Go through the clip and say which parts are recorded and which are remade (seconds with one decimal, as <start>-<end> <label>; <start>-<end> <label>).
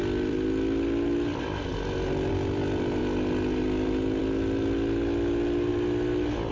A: 0.0-1.7 remade; 1.7-2.3 recorded; 2.3-3.0 remade; 3.0-4.2 recorded; 4.2-5.7 remade; 5.7-6.5 recorded